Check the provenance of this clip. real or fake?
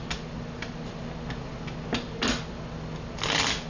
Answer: real